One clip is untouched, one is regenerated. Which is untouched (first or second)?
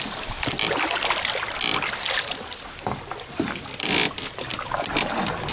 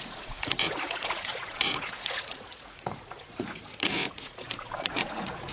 first